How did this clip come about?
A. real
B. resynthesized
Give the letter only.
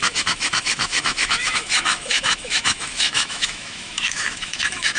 B